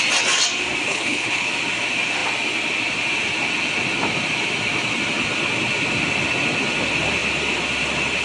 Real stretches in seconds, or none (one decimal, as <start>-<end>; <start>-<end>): 0.0-0.9; 1.5-8.2